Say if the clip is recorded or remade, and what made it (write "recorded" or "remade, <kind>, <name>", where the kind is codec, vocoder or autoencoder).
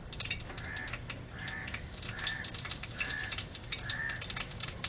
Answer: remade, vocoder, BigVGAN v2